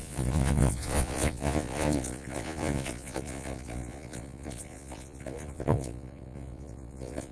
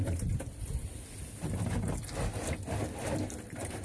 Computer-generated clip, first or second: first